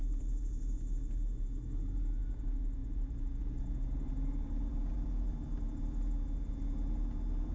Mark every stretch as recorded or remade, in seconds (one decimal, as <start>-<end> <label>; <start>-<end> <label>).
0.0-4.7 recorded; 4.7-5.3 remade; 5.3-7.5 recorded